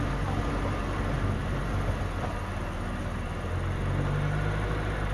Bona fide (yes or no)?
yes